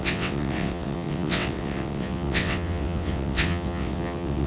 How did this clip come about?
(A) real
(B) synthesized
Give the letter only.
B